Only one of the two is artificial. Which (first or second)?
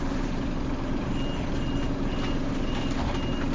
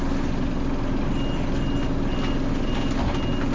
first